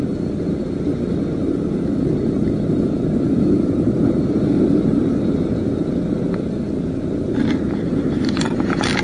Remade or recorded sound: recorded